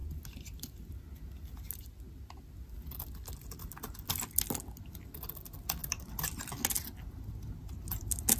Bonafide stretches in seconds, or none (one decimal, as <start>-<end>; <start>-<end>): 0.0-8.4